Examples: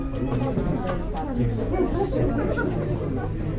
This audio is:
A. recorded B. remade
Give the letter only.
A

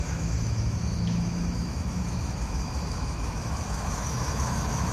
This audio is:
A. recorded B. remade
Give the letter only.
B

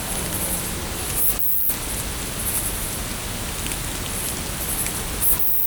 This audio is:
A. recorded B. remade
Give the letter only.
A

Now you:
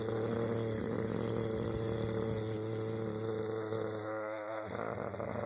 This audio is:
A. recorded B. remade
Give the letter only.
A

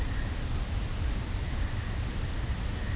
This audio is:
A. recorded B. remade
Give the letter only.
A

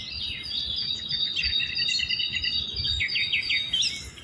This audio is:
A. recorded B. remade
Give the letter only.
A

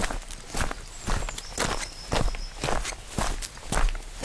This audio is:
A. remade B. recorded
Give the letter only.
B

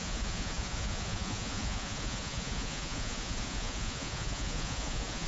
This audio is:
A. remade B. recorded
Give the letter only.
A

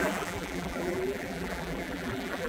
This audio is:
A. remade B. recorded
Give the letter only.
A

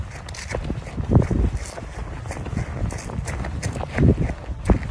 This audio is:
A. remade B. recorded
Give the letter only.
B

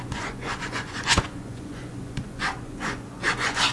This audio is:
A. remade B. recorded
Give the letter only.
A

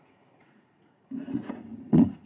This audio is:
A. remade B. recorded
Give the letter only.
A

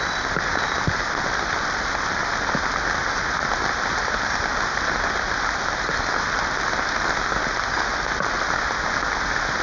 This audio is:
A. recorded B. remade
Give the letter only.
A